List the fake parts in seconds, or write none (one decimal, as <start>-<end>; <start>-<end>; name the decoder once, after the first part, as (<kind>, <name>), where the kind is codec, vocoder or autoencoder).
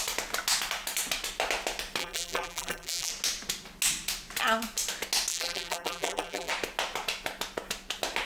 2.0-3.1 (vocoder, BigVGAN v2); 5.3-6.5